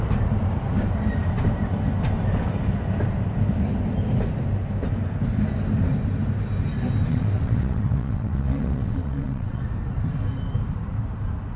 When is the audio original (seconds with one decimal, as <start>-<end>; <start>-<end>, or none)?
0.0-7.1; 9.6-11.6

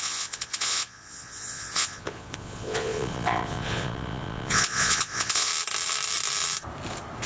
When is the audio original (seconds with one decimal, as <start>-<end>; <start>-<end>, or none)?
5.5-7.3

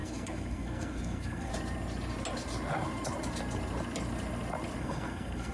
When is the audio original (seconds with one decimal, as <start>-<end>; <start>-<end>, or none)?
1.5-4.8

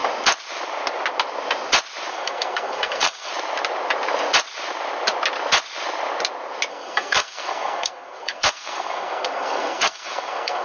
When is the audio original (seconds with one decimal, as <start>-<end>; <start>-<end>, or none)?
0.0-2.1; 3.3-6.7

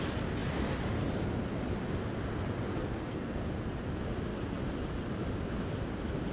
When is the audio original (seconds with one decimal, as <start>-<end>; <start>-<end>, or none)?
0.0-2.7; 3.4-6.3